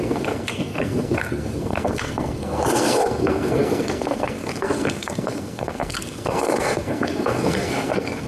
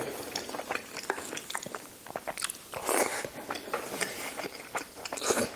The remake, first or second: first